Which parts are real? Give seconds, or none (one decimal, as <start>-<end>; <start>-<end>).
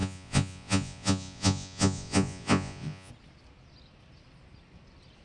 3.1-5.2